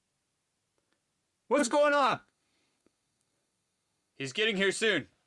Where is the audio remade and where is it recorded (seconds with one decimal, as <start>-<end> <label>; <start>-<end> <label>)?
0.0-1.6 recorded; 1.6-4.1 remade; 4.1-5.3 recorded